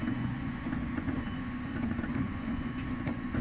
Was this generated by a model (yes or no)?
yes